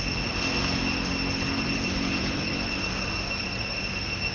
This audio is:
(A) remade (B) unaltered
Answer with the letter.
B